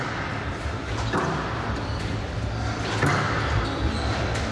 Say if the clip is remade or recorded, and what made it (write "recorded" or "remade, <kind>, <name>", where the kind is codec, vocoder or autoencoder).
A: remade, vocoder, BigVGAN v2